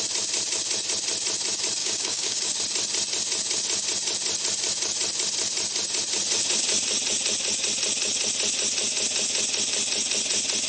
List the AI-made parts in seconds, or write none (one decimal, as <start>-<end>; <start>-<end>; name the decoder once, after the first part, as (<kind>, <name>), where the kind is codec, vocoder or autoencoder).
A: 1.8-2.6 (codec, DAC)